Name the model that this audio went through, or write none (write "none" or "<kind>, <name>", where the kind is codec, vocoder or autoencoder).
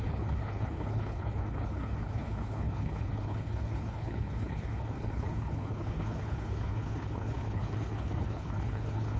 codec, HILCodec